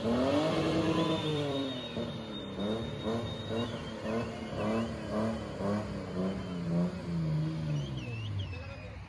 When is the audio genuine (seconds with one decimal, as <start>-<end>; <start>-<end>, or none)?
0.0-1.3; 2.4-9.1